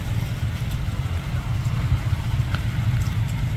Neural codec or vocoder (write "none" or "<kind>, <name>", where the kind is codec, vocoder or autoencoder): none